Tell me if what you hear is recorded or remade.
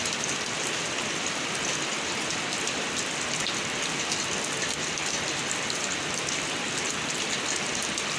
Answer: recorded